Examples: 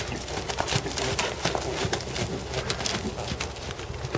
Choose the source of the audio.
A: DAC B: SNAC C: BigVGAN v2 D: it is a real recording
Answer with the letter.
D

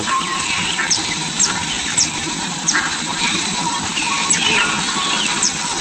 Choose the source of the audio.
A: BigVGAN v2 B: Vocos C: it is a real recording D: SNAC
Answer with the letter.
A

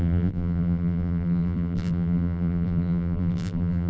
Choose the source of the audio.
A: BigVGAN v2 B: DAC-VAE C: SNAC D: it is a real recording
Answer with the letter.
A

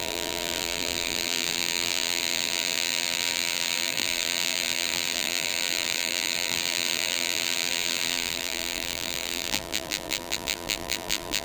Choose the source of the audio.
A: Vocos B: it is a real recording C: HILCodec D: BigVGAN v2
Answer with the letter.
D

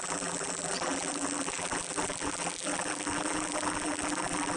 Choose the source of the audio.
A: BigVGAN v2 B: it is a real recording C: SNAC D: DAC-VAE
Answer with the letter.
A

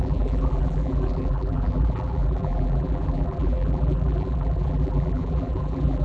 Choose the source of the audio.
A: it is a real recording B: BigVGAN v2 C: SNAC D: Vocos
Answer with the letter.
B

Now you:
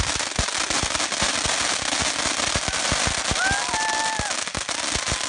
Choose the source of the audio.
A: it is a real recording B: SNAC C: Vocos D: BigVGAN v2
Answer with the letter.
A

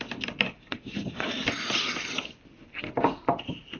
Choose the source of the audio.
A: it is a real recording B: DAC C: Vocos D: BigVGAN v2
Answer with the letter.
D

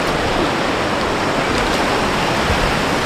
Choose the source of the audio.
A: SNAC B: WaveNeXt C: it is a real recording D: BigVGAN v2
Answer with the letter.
C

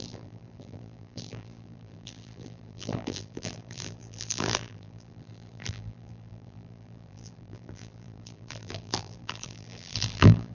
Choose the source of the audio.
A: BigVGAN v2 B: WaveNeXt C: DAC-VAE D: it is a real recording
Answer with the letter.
A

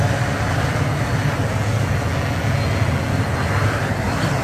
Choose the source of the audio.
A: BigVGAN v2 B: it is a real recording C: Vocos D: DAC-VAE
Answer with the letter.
B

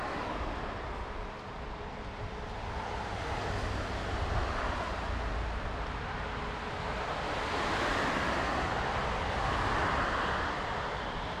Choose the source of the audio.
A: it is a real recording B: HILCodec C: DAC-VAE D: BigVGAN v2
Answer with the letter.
A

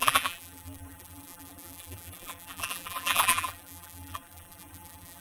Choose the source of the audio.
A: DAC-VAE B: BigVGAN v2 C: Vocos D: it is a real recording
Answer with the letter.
B